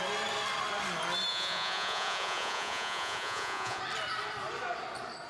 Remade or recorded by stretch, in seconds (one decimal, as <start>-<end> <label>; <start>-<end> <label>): 0.0-1.3 recorded; 1.3-3.8 remade; 3.8-5.3 recorded